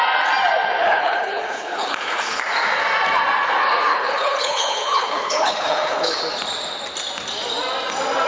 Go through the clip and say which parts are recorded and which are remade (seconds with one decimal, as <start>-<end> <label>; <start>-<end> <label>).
0.0-0.8 recorded; 0.8-2.4 remade; 2.4-3.9 recorded; 3.9-6.2 remade; 6.2-8.3 recorded